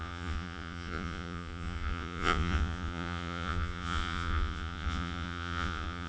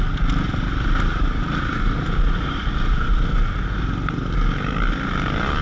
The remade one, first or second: first